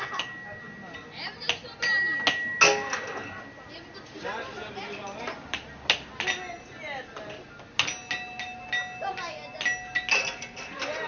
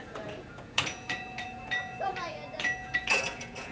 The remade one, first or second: second